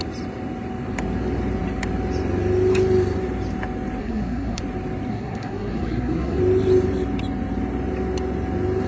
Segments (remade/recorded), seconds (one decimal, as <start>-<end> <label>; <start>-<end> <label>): 0.0-4.0 recorded; 4.0-4.6 remade; 4.6-5.1 recorded; 5.1-6.4 remade; 6.4-8.9 recorded